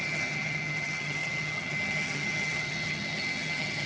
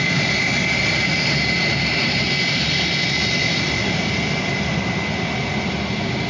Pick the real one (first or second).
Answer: second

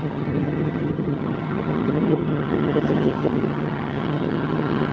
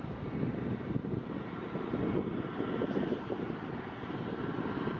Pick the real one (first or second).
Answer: second